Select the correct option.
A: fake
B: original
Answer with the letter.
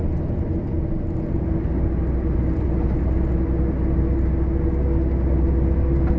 B